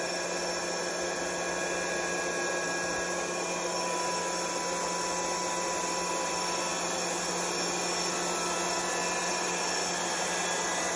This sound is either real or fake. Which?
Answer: real